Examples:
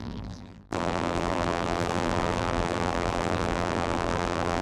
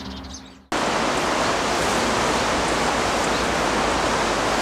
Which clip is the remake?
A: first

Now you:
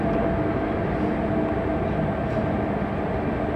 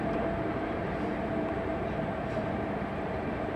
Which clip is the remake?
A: second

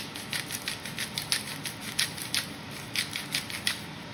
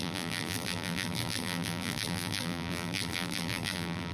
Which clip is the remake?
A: second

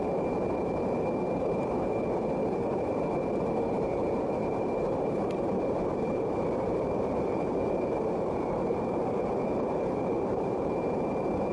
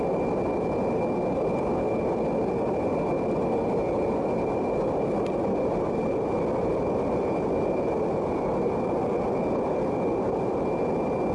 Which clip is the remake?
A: first